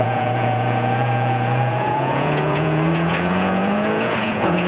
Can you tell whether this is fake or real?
fake